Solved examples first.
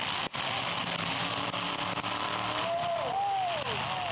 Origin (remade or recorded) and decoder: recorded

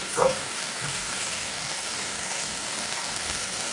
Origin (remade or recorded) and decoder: remade, codec, DAC